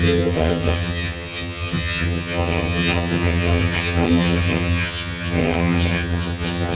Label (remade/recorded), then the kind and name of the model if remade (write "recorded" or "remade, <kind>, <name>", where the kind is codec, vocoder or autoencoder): remade, vocoder, HiFi-GAN